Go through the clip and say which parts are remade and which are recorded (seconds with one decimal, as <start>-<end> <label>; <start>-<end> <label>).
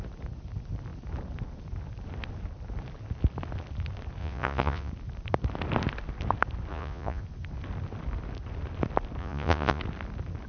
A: 0.0-4.2 recorded; 4.2-4.9 remade; 4.9-6.7 recorded; 6.7-7.2 remade; 7.2-9.2 recorded; 9.2-9.8 remade; 9.8-10.5 recorded